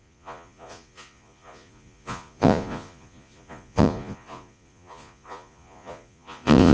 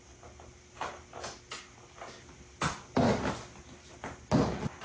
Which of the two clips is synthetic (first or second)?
first